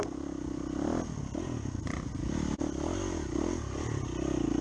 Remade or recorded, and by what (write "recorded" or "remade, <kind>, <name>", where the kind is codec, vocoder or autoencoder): recorded